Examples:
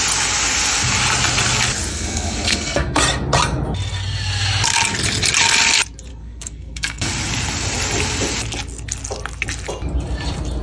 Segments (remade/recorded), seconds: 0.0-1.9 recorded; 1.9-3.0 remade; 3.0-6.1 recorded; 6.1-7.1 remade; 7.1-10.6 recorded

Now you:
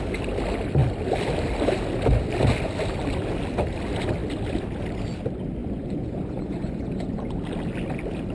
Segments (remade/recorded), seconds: 0.0-5.6 recorded; 5.6-7.3 remade; 7.3-8.3 recorded

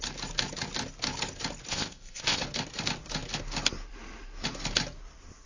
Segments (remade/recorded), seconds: 0.0-1.7 recorded; 1.7-2.4 remade; 2.4-5.5 recorded

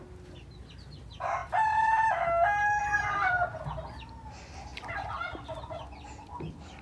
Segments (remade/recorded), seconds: 0.0-1.4 recorded; 1.4-2.2 remade; 2.2-2.8 recorded; 2.8-3.8 remade; 3.8-6.8 recorded

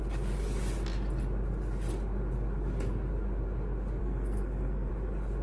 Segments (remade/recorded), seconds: 0.0-4.0 recorded; 4.0-4.9 remade; 4.9-5.4 recorded

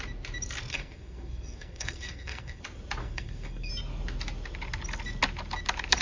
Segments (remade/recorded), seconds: 0.0-0.7 recorded; 0.7-2.6 remade; 2.6-3.0 recorded; 3.0-3.7 remade; 3.7-6.0 recorded